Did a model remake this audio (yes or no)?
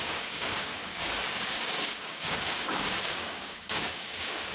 yes